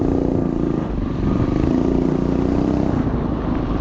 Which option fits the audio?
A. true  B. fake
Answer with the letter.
A